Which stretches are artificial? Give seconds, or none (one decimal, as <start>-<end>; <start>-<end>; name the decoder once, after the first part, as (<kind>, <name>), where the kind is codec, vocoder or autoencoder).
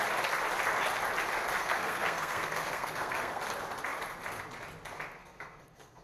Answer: 1.6-3.4 (codec, SNAC); 5.2-6.0